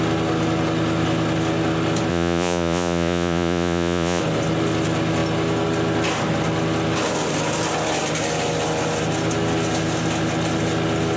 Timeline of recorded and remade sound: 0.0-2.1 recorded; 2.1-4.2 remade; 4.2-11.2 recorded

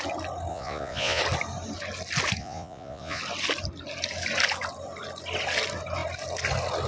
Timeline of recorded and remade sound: 0.0-0.5 recorded; 0.5-1.2 remade; 1.2-2.4 recorded; 2.4-3.2 remade; 3.2-6.9 recorded

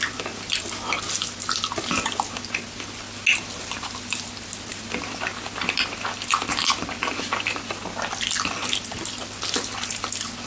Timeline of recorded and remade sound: 0.0-10.5 recorded

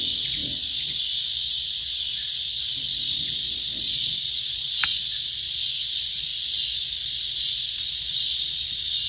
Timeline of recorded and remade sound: 0.0-9.1 remade

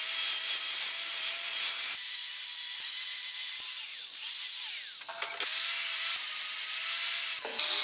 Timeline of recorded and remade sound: 0.0-7.8 recorded